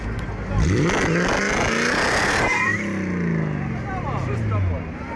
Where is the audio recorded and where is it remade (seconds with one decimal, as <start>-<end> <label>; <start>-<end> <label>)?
0.0-5.2 recorded